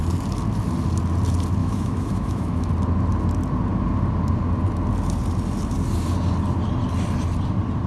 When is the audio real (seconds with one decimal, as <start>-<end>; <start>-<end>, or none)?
0.0-1.6; 2.7-7.9